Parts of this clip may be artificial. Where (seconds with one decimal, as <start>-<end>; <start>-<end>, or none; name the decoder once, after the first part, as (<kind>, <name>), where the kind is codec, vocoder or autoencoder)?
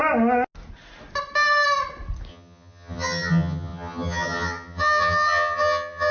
2.3-6.1 (vocoder, HiFi-GAN)